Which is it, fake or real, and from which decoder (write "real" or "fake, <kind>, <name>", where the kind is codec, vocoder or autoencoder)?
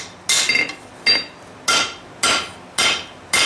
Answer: real